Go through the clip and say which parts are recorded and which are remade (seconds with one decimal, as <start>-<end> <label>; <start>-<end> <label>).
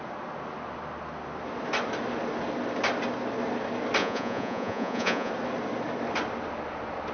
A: 0.0-4.0 recorded; 4.0-5.3 remade; 5.3-7.1 recorded